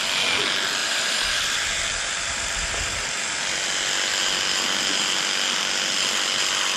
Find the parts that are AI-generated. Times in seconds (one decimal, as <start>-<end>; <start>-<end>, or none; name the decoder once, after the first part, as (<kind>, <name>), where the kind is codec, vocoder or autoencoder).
0.8-3.4 (vocoder, BigVGAN v2)